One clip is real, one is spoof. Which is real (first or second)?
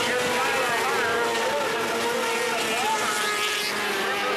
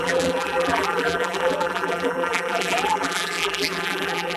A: first